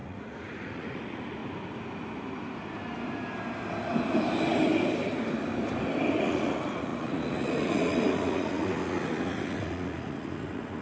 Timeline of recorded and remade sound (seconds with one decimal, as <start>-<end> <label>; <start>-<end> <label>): 0.0-1.4 remade; 1.4-6.2 recorded; 6.2-10.8 remade